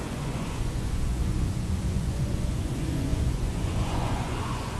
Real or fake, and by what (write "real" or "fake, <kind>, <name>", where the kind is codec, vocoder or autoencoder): fake, vocoder, Vocos